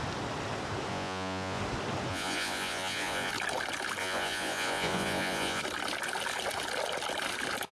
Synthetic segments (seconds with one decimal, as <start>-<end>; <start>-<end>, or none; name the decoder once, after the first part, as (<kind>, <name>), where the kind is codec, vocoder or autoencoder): 0.9-1.6 (vocoder, Vocos); 2.1-3.3; 4.0-5.6